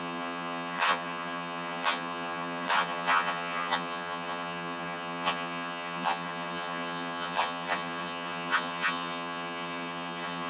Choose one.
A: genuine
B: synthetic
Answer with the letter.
B